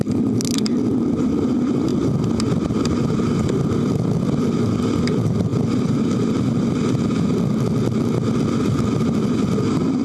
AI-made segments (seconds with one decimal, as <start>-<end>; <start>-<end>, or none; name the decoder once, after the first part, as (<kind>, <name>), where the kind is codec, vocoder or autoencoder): none